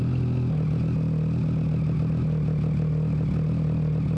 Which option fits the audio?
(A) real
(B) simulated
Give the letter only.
A